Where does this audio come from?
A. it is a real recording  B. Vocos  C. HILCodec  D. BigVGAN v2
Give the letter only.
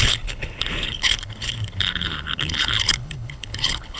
C